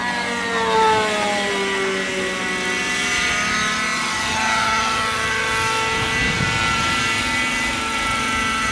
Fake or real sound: real